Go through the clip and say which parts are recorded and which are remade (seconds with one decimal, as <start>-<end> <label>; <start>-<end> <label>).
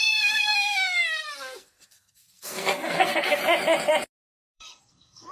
0.0-3.4 remade; 3.4-4.5 recorded; 4.5-5.3 remade